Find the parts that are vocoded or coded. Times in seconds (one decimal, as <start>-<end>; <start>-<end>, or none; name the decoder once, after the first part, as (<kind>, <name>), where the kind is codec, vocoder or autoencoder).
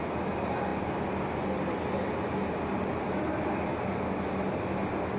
none